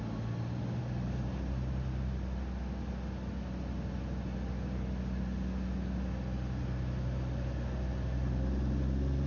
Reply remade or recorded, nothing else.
recorded